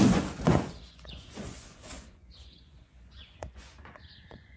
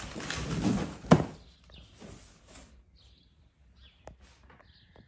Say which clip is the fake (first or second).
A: first